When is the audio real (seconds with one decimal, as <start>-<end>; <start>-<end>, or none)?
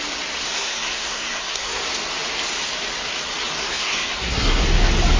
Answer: 0.0-0.5; 1.8-3.6; 4.6-5.2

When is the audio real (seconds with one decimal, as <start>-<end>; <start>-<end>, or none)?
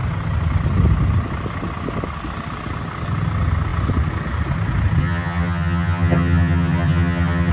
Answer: 0.0-5.0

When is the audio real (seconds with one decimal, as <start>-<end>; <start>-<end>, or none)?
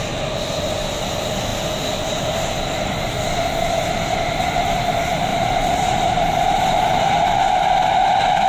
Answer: 0.0-5.3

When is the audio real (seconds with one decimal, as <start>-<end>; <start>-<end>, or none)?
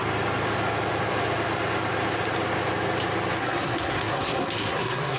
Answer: 0.0-3.4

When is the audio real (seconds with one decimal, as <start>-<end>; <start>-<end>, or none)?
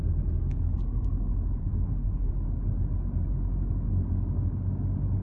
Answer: 0.0-1.6; 2.3-5.2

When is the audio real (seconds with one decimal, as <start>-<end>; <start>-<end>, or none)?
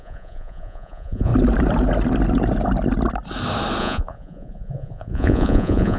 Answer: 1.3-3.8